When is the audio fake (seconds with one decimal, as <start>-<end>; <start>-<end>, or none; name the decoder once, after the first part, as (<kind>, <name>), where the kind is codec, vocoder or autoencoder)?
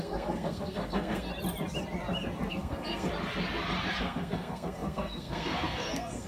0.0-1.3 (codec, SNAC); 2.5-3.1; 4.0-6.3